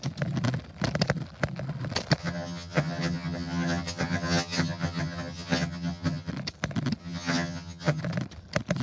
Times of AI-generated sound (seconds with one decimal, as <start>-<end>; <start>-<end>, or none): 2.2-6.3; 7.0-8.0